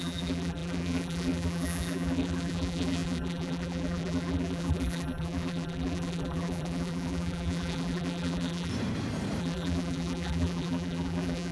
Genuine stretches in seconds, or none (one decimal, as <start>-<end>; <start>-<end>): 8.7-9.4